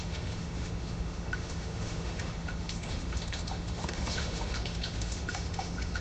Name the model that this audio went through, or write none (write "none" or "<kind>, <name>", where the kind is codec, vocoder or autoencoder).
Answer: autoencoder, DAC-VAE